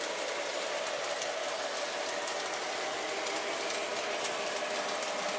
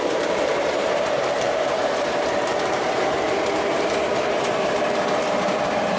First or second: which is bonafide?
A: first